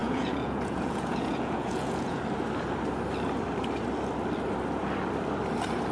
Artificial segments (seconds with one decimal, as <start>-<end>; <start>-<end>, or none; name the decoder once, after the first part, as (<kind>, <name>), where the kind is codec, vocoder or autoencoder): 0.0-2.2 (vocoder, Vocos)

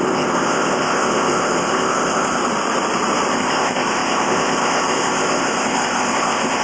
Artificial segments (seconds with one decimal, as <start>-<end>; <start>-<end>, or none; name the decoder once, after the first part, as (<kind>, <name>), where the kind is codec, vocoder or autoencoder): 0.0-2.4 (codec, ZipCodec); 3.3-6.6

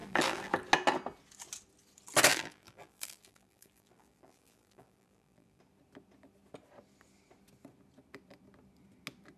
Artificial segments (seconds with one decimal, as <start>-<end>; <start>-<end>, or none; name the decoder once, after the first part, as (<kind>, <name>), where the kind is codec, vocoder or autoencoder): 0.0-0.5 (vocoder, BigVGAN v2); 2.3-5.6

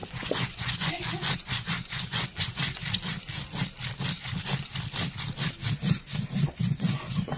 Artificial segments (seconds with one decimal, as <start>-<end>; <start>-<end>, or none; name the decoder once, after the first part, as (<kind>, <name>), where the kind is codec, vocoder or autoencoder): 0.0-2.8 (vocoder, Vocos); 6.6-7.4

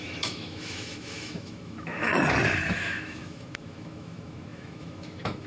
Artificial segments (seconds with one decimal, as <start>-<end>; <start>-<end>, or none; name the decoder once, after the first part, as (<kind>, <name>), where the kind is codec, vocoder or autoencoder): 0.0-2.1 (autoencoder, DAC-VAE); 2.7-5.5